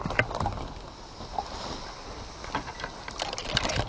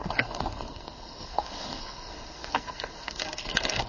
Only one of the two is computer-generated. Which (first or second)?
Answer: second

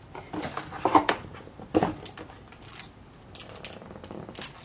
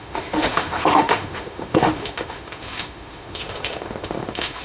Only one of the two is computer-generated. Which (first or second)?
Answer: second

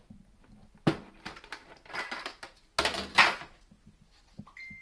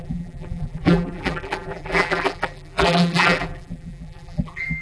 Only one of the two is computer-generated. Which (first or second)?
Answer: second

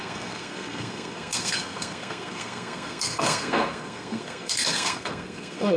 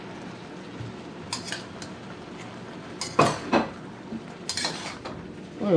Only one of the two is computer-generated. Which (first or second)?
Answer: first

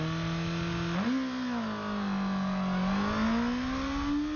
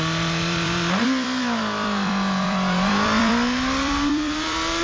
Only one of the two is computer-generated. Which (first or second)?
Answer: second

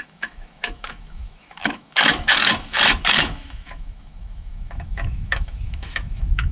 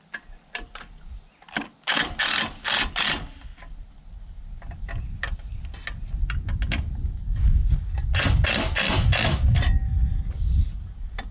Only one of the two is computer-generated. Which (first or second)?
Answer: first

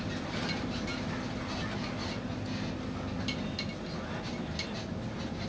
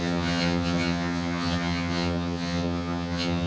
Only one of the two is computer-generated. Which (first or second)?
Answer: second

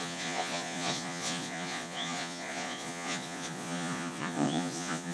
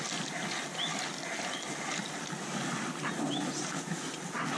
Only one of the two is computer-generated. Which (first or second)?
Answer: first